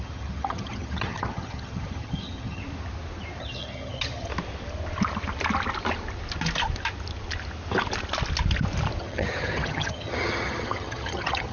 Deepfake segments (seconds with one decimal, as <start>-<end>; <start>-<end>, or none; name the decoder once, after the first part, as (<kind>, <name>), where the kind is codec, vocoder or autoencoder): 0.0-2.6 (vocoder, HiFi-GAN); 3.4-4.3; 9.0-11.5